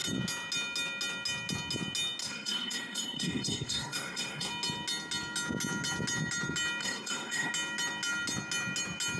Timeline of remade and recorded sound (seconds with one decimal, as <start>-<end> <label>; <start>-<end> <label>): 0.0-2.2 recorded; 2.2-4.5 remade; 4.5-6.8 recorded; 6.8-7.5 remade; 7.5-9.2 recorded